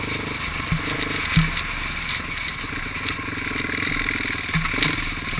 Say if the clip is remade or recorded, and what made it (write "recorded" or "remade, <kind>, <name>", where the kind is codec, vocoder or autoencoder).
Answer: recorded